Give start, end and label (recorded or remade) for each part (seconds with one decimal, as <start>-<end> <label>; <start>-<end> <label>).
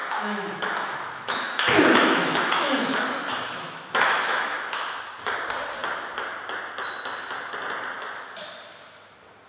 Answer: 0.0-5.0 remade; 5.0-9.5 recorded